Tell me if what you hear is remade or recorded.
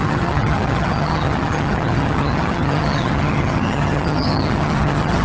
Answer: remade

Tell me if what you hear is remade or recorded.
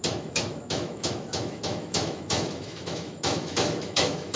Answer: remade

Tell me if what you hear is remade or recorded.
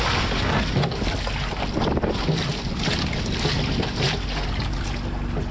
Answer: recorded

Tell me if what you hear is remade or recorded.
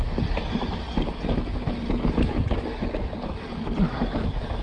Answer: recorded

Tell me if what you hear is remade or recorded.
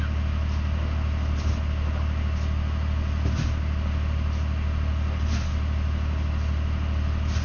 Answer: recorded